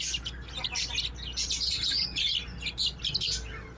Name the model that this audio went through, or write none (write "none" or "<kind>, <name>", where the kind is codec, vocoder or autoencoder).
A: none